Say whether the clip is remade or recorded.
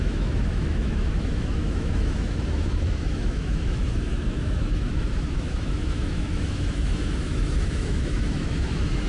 remade